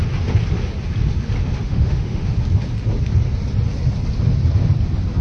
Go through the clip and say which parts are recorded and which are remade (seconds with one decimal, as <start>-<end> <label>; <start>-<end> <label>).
0.0-1.4 recorded; 1.4-2.3 remade; 2.3-5.2 recorded